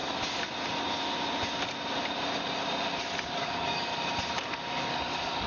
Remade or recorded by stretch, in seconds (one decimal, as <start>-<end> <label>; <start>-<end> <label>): 0.0-3.3 recorded; 3.3-3.9 remade; 3.9-4.4 recorded; 4.4-5.5 remade